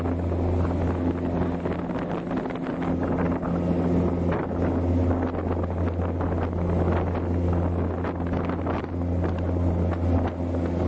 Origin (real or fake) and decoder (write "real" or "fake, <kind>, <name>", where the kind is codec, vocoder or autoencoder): real